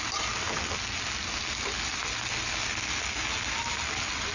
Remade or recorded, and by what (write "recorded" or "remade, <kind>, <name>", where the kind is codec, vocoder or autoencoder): recorded